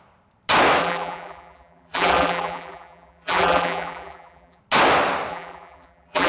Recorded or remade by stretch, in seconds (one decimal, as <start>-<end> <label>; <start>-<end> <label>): 0.0-0.8 recorded; 0.8-4.6 remade; 4.6-5.3 recorded; 5.3-6.3 remade